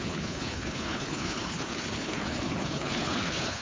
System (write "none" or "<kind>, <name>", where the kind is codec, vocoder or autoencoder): codec, HILCodec